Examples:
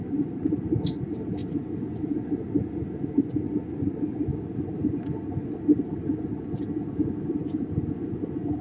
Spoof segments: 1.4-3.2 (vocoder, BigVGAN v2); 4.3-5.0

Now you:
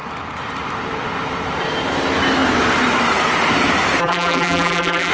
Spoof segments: 4.0-5.1 (vocoder, BigVGAN v2)

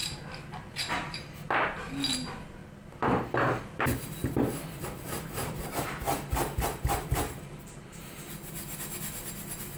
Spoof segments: 0.0-1.9 (vocoder, BigVGAN v2); 2.6-3.6; 4.2-8.3

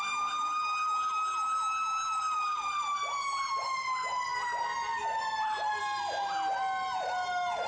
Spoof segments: 4.3-5.8 (vocoder, BigVGAN v2)

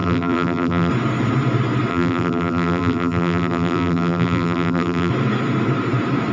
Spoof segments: 0.0-0.9 (vocoder, BigVGAN v2); 1.9-5.1

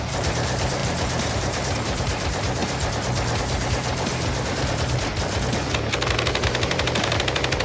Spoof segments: 0.0-2.6 (vocoder, BigVGAN v2); 3.4-4.1; 6.4-7.6

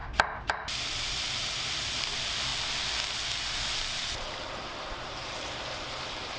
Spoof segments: 0.5-2.5 (vocoder, BigVGAN v2); 3.4-6.4

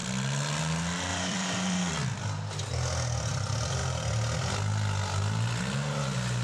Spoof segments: 1.1-1.8 (vocoder, BigVGAN v2)